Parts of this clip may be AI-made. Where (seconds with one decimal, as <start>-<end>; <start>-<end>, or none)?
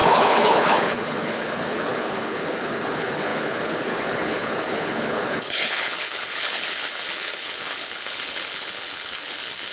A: 0.0-9.7